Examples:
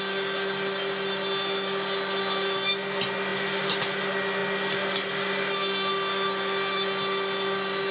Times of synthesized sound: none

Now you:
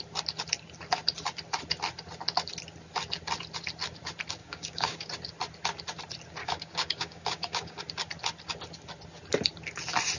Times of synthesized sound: 4.4-5.1 (codec, DAC); 6.4-7.8

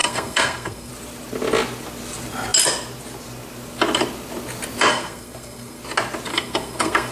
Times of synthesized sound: 0.0-0.9 (codec, SNAC); 4.9-5.8; 6.3-7.1

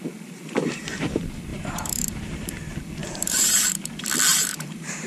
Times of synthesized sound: 1.5-2.6 (vocoder, BigVGAN v2); 3.0-3.9; 4.3-5.1

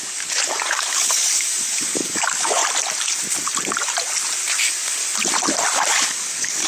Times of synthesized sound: 0.0-2.6 (codec, DAC); 4.6-5.0; 5.9-6.7

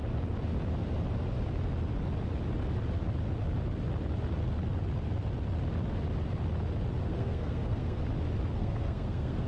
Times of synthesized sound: 7.0-8.0 (codec, SNAC); 8.6-9.5

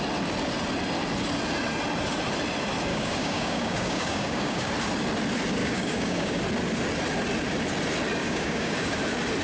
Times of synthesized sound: 2.9-4.7 (codec, DAC); 5.6-6.4; 8.2-9.0